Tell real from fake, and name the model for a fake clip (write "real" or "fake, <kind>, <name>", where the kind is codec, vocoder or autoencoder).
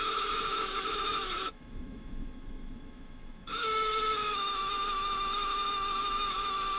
fake, autoencoder, DAC-VAE